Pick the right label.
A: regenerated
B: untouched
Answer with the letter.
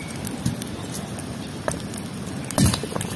B